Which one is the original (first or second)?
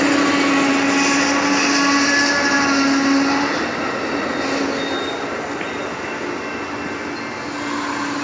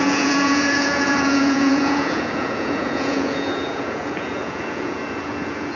first